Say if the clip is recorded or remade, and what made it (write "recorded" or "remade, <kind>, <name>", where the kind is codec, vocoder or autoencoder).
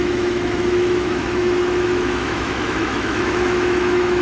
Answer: remade, autoencoder, DAC-VAE